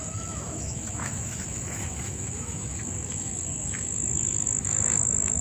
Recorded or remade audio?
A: remade